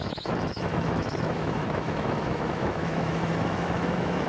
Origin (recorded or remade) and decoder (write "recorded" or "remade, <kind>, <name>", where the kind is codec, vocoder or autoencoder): remade, autoencoder, DAC-VAE